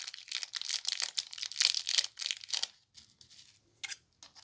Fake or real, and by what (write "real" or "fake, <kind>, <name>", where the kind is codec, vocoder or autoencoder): real